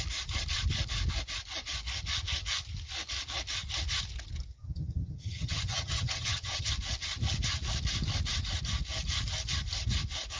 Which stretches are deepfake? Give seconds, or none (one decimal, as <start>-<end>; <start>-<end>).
4.6-6.7